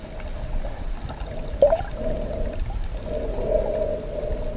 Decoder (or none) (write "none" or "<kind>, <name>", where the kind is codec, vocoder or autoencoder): none